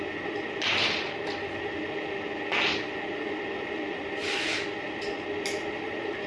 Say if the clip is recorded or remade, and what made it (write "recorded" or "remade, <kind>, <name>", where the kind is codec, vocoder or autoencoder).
recorded